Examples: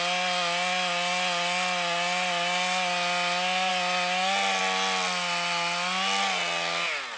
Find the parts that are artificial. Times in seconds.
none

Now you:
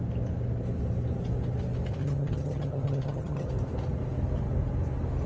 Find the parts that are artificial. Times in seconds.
2.0-3.5 (vocoder, HiFi-GAN)

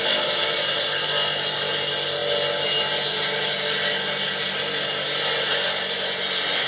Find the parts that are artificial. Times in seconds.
none

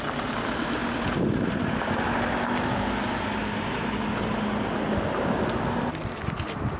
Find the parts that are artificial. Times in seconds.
none

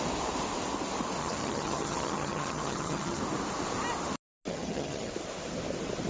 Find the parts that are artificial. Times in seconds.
1.2-3.2 (vocoder, HiFi-GAN); 4.5-5.1

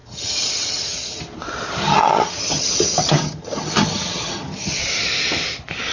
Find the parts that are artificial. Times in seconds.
0.0-1.2 (vocoder, HiFi-GAN); 1.8-4.8

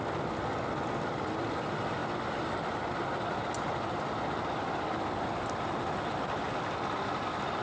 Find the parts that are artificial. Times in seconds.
none